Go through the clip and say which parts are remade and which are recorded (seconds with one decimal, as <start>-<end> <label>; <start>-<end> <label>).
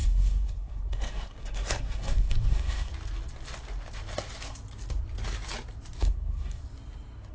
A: 0.0-2.9 remade; 2.9-6.0 recorded; 6.0-6.6 remade; 6.6-7.3 recorded